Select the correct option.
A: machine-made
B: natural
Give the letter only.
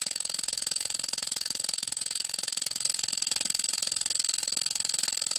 A